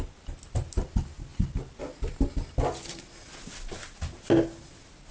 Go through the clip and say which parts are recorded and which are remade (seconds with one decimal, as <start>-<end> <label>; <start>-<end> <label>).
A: 0.0-5.1 recorded